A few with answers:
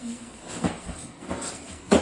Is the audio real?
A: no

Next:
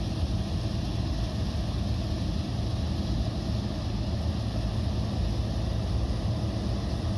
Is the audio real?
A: yes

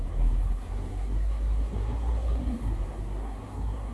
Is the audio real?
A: no